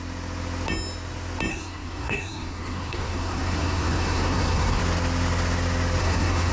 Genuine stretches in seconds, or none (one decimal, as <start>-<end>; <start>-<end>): 0.0-1.5; 4.8-6.0